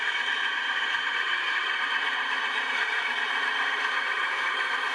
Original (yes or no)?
no